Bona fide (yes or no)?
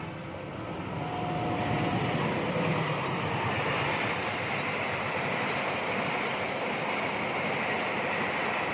yes